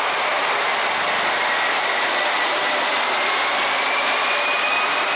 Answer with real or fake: real